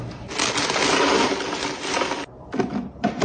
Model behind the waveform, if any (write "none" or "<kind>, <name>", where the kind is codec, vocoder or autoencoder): none